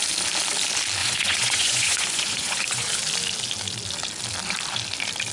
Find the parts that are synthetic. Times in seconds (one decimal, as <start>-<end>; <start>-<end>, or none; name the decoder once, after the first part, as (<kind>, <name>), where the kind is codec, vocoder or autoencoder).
1.0-2.9 (vocoder, Vocos)